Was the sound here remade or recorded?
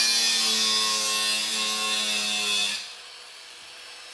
recorded